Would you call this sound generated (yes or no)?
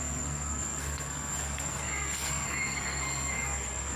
yes